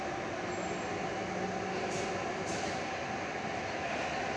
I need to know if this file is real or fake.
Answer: real